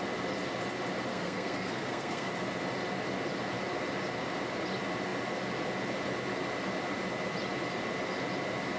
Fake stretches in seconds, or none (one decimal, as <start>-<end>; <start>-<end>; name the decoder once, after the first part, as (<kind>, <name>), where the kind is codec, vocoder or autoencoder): 1.1-2.3 (codec, SNAC)